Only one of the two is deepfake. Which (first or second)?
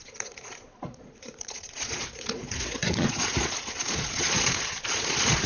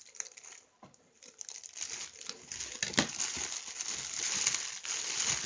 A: first